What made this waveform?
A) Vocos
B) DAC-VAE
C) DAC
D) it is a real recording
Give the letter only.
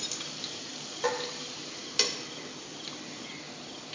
D